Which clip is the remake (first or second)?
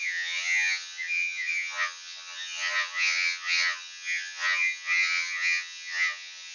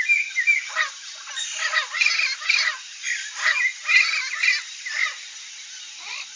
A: first